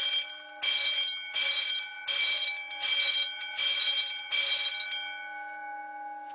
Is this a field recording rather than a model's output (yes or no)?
yes